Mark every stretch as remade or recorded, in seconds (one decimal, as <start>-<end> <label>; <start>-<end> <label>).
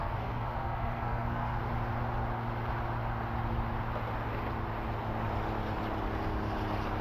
0.0-1.6 remade; 1.6-7.0 recorded